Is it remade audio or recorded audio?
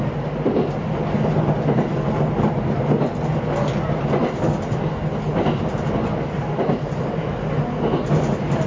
recorded